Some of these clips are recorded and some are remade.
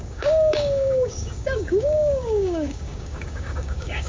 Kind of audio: remade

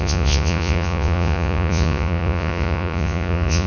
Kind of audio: remade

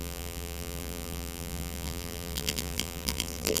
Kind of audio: remade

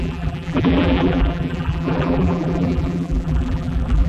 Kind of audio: remade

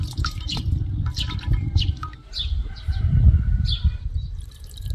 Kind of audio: remade